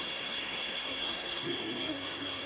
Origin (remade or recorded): remade